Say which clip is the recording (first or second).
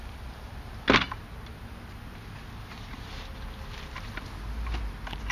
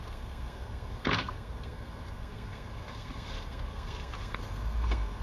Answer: first